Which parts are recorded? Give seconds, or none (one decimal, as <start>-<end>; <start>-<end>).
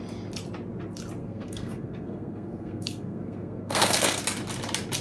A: 0.0-1.2; 4.2-5.0